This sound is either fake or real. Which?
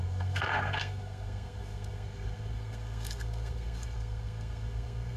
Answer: fake